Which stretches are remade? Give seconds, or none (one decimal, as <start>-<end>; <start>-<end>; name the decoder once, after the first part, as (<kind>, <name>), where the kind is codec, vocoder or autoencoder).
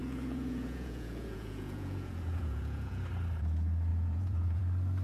0.0-3.0 (vocoder, Vocos); 3.9-4.6